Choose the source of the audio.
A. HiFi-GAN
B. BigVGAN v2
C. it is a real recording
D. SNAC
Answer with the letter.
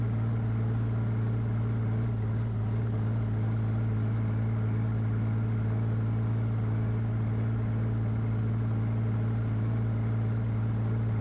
C